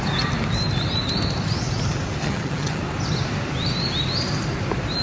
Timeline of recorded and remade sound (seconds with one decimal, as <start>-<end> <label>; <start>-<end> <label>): 0.0-2.2 recorded; 2.2-2.8 remade; 2.8-5.0 recorded